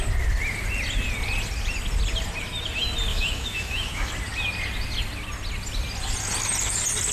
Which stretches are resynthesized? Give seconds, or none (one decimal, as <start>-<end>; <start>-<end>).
3.1-4.1